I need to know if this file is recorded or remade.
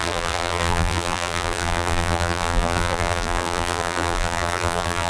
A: remade